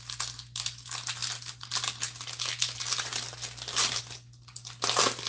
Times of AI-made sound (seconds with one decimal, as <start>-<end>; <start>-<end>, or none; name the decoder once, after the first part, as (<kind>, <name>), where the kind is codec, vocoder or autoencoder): none